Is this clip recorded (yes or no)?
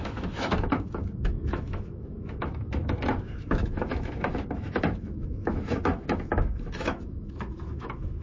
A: no